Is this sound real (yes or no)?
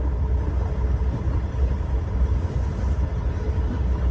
yes